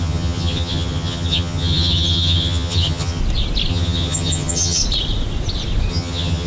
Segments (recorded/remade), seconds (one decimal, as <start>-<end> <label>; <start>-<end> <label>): 0.0-3.2 remade; 3.2-3.7 recorded; 3.7-4.8 remade; 4.8-5.9 recorded; 5.9-6.5 remade